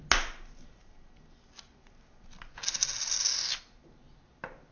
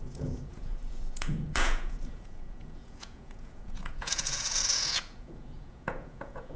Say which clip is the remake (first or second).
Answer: second